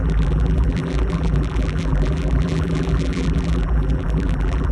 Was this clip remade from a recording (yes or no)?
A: yes